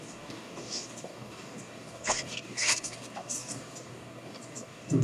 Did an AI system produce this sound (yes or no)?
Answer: yes